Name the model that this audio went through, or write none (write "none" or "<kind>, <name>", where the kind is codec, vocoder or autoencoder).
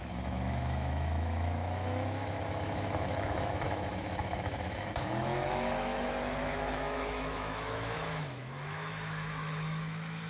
autoencoder, DAC-VAE